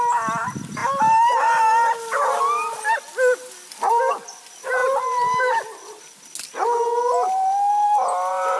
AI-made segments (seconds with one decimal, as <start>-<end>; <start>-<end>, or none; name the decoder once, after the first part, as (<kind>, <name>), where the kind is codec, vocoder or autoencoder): none